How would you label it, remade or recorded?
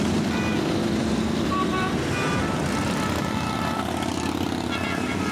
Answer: remade